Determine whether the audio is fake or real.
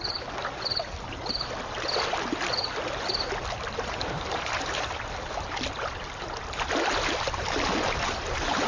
real